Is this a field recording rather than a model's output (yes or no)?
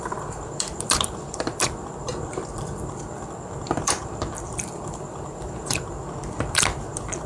no